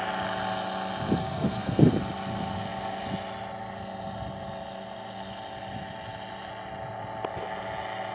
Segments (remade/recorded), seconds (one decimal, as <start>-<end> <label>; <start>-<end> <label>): 0.0-1.2 recorded; 1.2-1.9 remade; 1.9-8.1 recorded